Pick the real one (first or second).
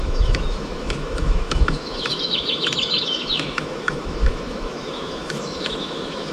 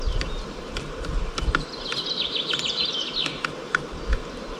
second